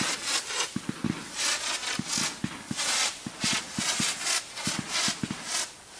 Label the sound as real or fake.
real